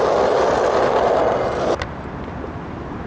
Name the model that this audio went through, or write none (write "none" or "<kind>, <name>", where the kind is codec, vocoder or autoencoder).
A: none